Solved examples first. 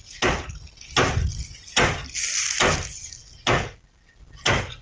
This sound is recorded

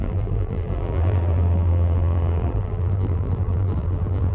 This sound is remade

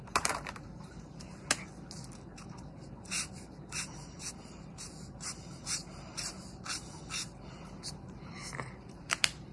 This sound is remade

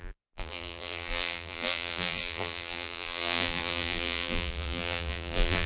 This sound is remade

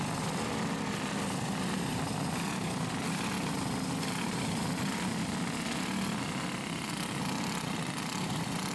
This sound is recorded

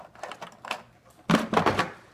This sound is recorded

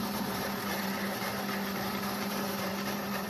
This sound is remade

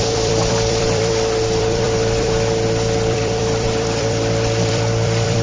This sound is remade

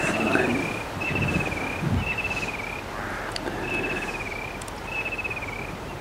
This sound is recorded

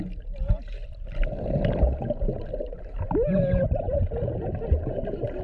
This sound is recorded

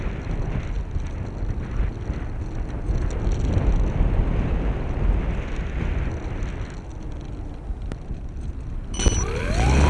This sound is recorded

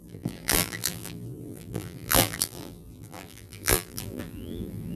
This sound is remade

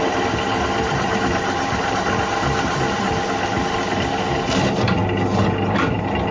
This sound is recorded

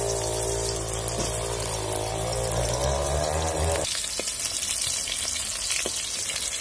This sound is recorded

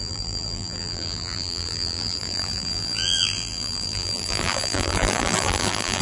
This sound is remade